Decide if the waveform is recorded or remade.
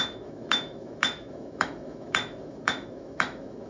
remade